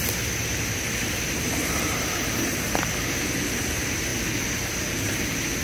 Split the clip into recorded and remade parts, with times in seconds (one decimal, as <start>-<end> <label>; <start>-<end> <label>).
0.0-4.1 remade; 4.1-4.9 recorded; 4.9-5.6 remade